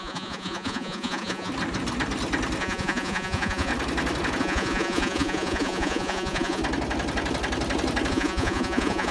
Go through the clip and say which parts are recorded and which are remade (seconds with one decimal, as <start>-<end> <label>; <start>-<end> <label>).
0.0-1.5 remade; 1.5-2.6 recorded; 2.6-3.7 remade; 3.7-4.4 recorded; 4.4-6.6 remade; 6.6-8.1 recorded; 8.1-9.1 remade